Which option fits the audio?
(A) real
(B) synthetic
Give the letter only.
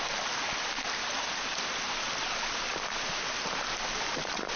A